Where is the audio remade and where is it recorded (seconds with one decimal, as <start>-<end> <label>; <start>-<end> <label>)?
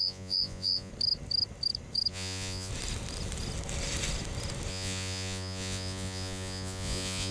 0.0-0.9 remade; 0.9-2.1 recorded; 2.1-2.7 remade; 2.7-4.7 recorded; 4.7-7.3 remade